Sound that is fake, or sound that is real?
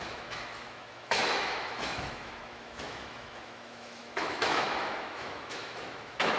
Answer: fake